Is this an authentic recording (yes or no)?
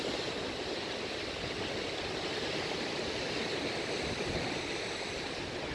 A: yes